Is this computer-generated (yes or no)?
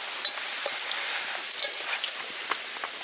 no